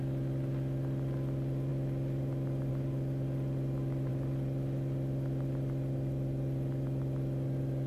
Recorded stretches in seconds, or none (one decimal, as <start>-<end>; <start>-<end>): 0.0-7.9